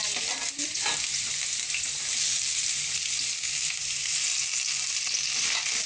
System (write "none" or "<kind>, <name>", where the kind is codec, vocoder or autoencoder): none